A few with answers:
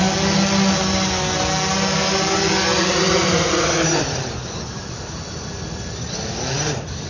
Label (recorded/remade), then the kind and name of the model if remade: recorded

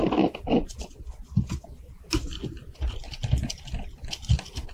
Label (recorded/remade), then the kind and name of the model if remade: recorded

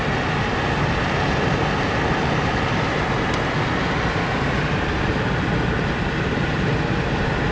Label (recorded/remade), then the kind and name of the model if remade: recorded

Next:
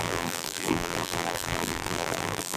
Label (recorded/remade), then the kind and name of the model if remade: remade, vocoder, BigVGAN v2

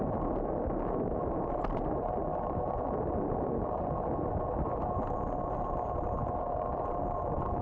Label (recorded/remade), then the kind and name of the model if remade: recorded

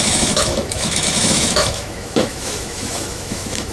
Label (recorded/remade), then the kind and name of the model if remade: remade, autoencoder, DAC-VAE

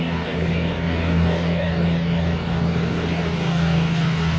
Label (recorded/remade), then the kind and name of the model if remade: remade, codec, DAC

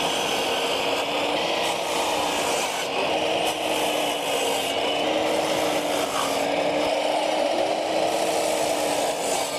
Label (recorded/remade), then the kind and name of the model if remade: recorded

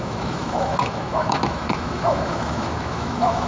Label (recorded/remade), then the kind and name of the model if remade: remade, autoencoder, DAC-VAE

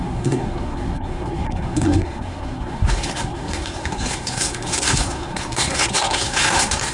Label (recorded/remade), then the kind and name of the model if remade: remade, codec, SNAC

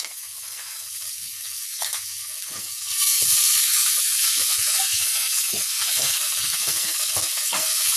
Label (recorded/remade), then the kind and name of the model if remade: remade, codec, SNAC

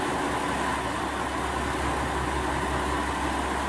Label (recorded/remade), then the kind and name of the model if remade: recorded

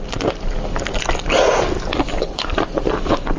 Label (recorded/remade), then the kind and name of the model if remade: recorded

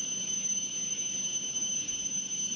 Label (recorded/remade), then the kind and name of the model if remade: remade, vocoder, BigVGAN v2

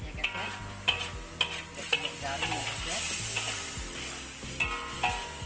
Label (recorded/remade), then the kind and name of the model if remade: recorded